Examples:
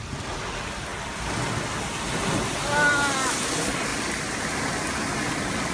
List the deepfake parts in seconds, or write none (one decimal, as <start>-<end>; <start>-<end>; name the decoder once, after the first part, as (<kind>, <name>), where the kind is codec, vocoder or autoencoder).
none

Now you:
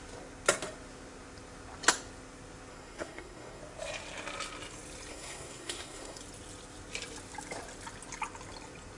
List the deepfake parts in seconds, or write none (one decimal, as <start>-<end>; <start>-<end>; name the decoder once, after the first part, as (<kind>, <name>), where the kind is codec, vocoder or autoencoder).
2.7-3.6 (codec, SNAC); 5.1-6.2

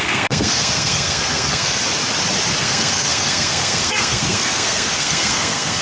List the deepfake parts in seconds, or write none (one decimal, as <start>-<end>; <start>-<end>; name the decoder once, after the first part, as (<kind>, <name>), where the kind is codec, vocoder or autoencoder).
0.0-1.8 (codec, SNAC); 2.6-5.8

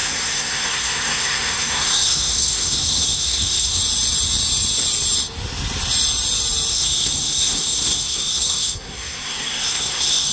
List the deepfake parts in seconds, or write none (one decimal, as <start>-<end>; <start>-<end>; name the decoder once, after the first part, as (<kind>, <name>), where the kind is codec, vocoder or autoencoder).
0.0-3.8 (codec, SNAC); 6.7-10.3

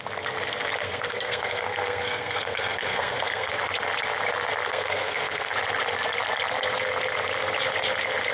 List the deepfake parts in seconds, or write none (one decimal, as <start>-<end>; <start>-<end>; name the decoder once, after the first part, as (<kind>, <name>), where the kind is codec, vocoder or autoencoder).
0.8-3.5 (codec, SNAC); 4.6-5.5